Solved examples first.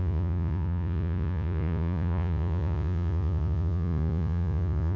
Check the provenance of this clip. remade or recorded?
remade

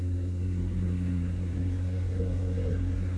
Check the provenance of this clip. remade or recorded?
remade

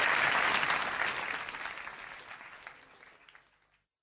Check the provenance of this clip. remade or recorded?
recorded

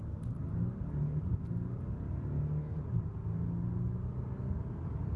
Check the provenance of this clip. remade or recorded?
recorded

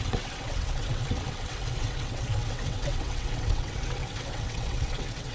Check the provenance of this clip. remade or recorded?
remade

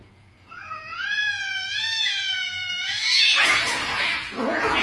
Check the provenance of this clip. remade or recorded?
remade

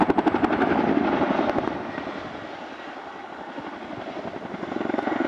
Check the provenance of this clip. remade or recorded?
recorded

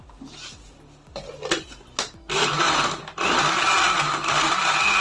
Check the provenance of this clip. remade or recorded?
recorded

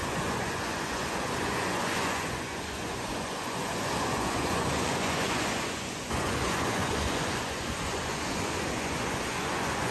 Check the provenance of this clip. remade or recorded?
remade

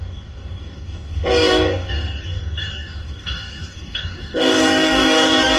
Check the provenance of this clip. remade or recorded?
remade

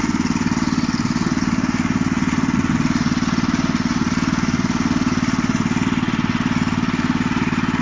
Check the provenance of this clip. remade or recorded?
recorded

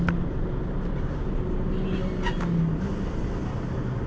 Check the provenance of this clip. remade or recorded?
recorded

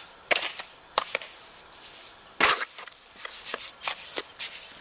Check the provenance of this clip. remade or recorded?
recorded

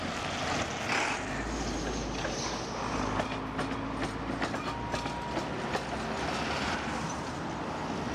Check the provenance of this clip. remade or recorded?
recorded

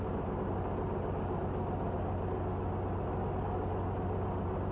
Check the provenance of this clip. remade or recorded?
recorded